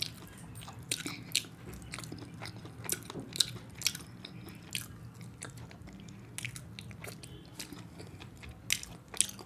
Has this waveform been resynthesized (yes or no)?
no